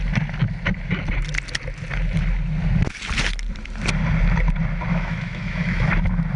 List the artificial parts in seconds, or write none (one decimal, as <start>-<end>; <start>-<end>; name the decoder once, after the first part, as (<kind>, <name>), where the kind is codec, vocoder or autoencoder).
4.9-5.9 (autoencoder, DAC-VAE)